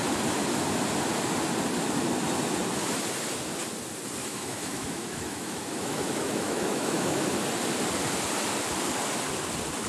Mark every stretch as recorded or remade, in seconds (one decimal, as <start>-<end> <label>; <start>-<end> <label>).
0.0-4.2 recorded; 4.2-7.2 remade; 7.2-9.9 recorded